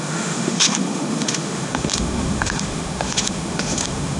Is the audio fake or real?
fake